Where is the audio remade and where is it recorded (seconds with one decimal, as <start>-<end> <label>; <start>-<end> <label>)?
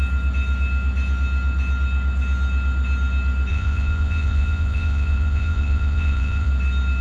0.0-3.5 recorded; 3.5-6.5 remade; 6.5-7.0 recorded